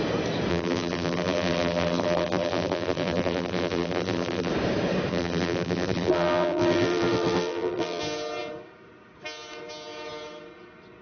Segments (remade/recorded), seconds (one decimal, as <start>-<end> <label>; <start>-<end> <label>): 0.0-0.5 recorded; 0.5-4.5 remade; 4.5-5.1 recorded; 5.1-8.0 remade; 8.0-11.0 recorded